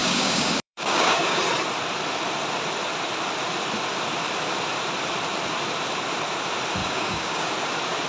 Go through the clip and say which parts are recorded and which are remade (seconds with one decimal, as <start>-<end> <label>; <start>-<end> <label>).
0.0-1.4 remade; 1.4-6.8 recorded; 6.8-7.5 remade; 7.5-8.1 recorded